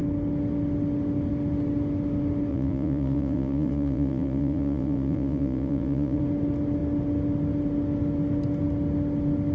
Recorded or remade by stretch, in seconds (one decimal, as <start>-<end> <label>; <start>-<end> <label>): 0.0-2.5 recorded; 2.5-6.2 remade; 6.2-9.5 recorded